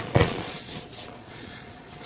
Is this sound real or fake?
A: fake